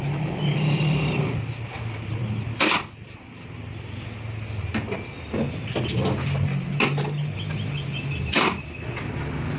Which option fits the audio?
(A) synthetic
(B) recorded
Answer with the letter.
B